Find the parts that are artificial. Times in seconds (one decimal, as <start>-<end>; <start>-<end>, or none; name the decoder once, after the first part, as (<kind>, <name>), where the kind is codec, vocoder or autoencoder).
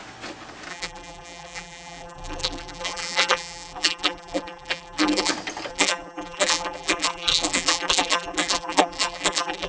0.7-5.3 (vocoder, BigVGAN v2); 5.7-9.7